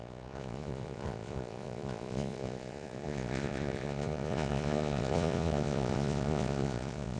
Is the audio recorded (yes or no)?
no